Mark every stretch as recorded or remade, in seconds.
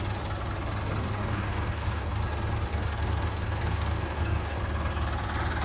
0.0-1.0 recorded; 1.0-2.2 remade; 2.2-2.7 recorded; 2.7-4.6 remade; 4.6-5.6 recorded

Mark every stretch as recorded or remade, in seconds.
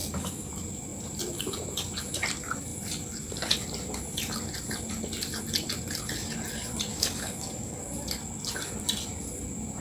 0.0-0.5 remade; 0.5-6.9 recorded; 6.9-7.8 remade; 7.8-9.8 recorded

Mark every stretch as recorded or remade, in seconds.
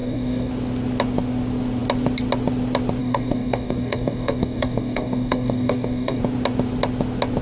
0.0-0.5 remade; 0.5-3.0 recorded; 3.0-6.2 remade; 6.2-7.4 recorded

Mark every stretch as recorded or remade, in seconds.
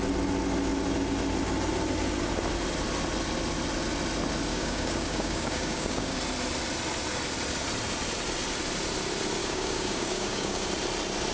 0.0-4.5 recorded; 4.5-6.2 remade; 6.2-9.4 recorded; 9.4-10.7 remade; 10.7-11.3 recorded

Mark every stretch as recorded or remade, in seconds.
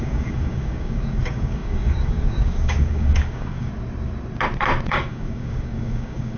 0.0-3.7 remade; 3.7-4.9 recorded; 4.9-6.4 remade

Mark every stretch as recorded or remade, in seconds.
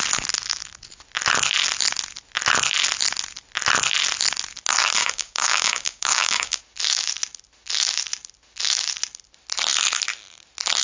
0.0-5.0 recorded; 5.0-6.6 remade; 6.6-10.8 recorded